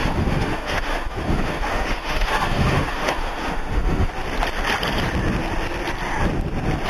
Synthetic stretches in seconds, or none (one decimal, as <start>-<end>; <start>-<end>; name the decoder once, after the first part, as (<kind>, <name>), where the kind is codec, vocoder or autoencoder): 0.0-4.1 (autoencoder, DAC-VAE)